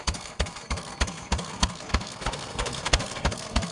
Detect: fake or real fake